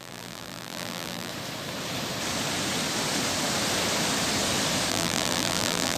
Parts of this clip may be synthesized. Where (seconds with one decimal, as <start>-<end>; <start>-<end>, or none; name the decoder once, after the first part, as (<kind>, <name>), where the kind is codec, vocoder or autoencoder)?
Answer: 0.0-1.3 (vocoder, BigVGAN v2); 4.9-6.0